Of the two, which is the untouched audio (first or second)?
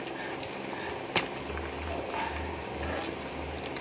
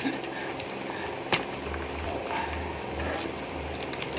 first